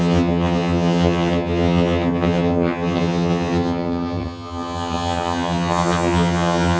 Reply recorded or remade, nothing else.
remade